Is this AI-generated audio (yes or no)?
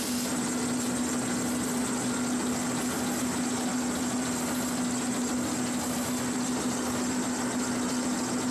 no